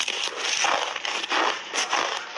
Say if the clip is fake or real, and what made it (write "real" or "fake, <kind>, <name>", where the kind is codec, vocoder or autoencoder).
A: real